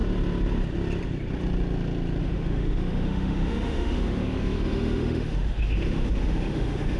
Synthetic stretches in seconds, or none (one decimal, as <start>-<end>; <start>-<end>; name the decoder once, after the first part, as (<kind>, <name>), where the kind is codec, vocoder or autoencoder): 2.2-7.0 (autoencoder, DAC-VAE)